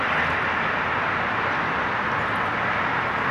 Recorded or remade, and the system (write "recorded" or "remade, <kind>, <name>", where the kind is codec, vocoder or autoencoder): recorded